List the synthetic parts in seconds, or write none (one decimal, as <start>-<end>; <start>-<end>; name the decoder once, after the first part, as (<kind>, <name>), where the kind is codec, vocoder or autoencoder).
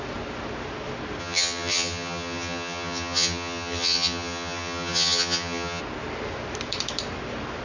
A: 1.2-5.8 (vocoder, HiFi-GAN)